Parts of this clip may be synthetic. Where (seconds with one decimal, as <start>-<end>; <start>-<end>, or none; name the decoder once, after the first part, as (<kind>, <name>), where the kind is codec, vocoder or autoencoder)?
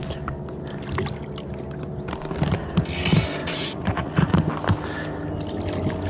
3.4-4.4 (vocoder, Vocos)